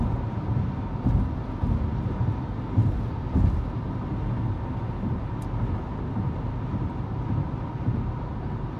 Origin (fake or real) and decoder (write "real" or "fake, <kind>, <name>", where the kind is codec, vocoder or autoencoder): real